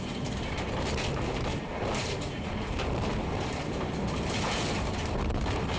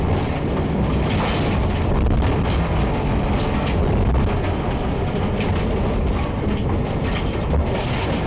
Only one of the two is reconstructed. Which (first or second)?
first